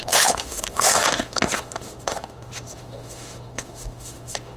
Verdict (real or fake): fake